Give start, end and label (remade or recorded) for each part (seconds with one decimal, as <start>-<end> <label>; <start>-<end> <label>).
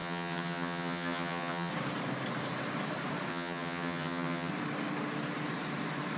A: 0.0-1.7 remade; 1.7-3.3 recorded; 3.3-4.5 remade; 4.5-6.2 recorded